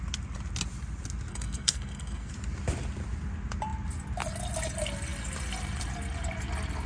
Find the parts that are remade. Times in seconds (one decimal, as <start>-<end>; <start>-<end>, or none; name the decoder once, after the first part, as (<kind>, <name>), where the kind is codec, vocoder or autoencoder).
1.3-2.3 (codec, SNAC)